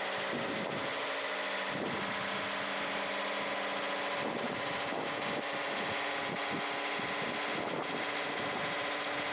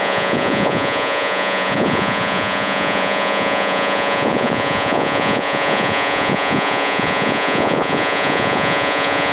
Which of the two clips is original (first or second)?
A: first